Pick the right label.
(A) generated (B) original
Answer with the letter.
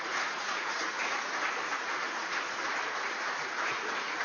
A